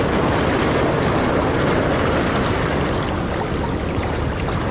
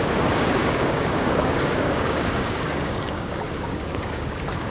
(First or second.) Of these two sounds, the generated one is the second